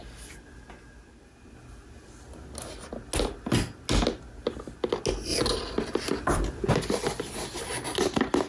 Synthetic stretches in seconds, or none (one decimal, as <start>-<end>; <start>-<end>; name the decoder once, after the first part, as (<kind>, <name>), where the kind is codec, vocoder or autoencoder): 5.3-6.7 (vocoder, BigVGAN v2)

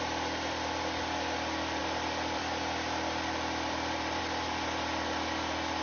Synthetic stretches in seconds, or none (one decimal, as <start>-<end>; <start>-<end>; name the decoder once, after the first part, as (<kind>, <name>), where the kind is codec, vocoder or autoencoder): 1.8-4.2 (vocoder, BigVGAN v2)

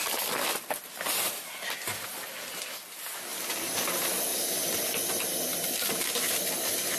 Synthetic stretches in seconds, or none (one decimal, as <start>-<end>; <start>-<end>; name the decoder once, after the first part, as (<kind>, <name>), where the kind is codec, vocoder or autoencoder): 0.5-1.1 (vocoder, BigVGAN v2); 4.3-5.2

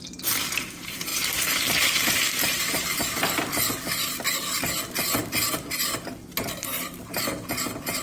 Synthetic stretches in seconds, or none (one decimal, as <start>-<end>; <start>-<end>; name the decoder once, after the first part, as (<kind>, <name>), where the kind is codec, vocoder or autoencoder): 1.1-3.2 (vocoder, BigVGAN v2)

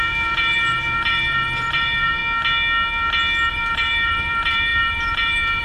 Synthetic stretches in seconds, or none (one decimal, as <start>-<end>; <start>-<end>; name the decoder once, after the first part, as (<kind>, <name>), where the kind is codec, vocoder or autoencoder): 0.0-2.2 (vocoder, BigVGAN v2); 3.5-5.6

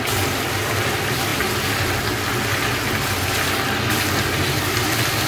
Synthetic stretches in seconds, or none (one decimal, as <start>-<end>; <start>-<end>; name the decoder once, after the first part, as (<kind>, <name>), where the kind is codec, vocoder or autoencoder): 0.0-1.3 (vocoder, BigVGAN v2); 4.5-5.3

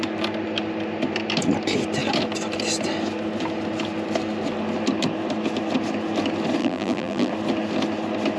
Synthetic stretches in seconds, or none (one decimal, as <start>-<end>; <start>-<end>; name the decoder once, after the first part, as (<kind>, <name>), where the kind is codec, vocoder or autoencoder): 6.6-7.3 (vocoder, BigVGAN v2)